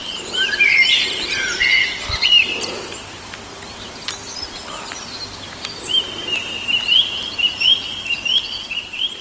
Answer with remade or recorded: remade